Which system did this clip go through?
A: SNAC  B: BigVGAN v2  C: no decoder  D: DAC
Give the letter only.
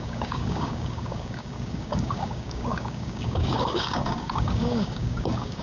D